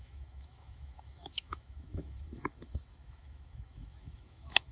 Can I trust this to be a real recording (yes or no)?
no